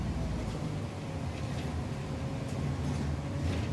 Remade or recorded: recorded